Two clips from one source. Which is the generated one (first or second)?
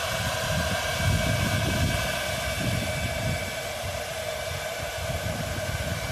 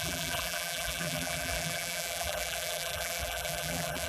second